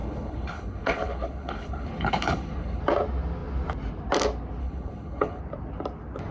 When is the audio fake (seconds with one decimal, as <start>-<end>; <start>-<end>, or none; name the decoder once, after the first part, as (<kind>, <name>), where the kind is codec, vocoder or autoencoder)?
0.0-2.8 (codec, HILCodec); 4.6-5.4